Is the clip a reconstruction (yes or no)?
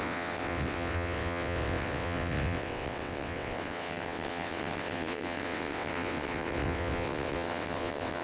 yes